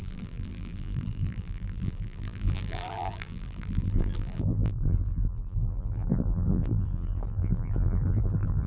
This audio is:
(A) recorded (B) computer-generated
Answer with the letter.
B